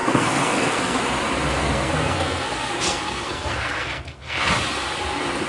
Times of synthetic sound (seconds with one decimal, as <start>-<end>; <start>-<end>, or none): 0.0-1.0; 1.5-4.5